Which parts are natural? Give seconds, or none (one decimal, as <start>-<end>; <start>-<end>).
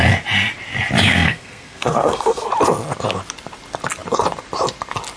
0.0-1.1; 2.5-5.2